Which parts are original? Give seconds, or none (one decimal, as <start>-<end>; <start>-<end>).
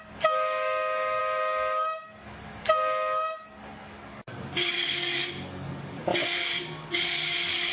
none